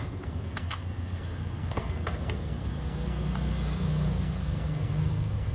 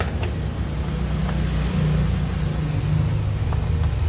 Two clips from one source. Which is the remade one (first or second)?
first